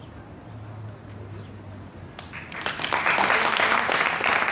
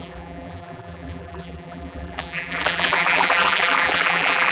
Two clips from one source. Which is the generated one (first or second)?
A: second